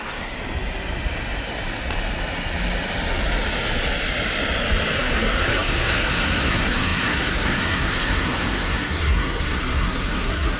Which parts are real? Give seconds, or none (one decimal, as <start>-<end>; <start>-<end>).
0.4-5.0